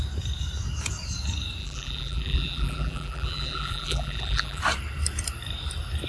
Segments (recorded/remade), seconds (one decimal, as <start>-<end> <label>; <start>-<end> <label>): 0.0-1.6 recorded; 1.6-4.6 remade; 4.6-6.1 recorded